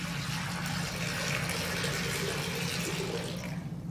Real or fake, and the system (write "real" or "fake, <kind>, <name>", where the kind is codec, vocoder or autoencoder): real